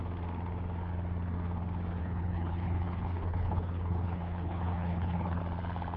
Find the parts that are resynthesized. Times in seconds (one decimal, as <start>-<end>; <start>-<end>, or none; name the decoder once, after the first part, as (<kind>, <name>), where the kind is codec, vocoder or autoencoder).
2.0-5.4 (codec, HILCodec)